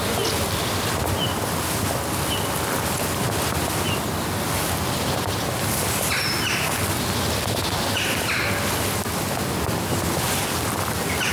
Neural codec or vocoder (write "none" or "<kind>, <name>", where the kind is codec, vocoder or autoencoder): none